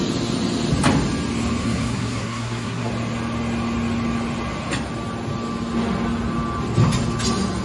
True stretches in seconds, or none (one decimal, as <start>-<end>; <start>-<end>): 0.0-1.6; 2.9-7.6